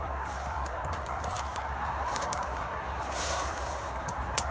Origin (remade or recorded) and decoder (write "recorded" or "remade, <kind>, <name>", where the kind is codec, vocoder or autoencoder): remade, codec, SNAC